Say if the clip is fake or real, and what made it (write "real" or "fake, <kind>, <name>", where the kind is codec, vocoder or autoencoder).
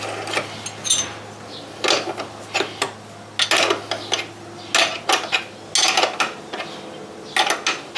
real